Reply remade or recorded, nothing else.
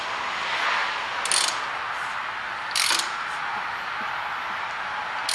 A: recorded